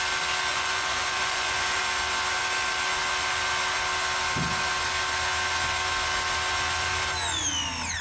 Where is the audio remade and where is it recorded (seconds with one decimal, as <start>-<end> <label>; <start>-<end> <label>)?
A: 0.0-0.5 recorded; 0.5-1.8 remade; 1.8-8.0 recorded